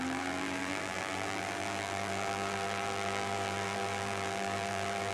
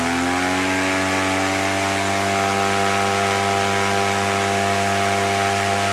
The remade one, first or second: first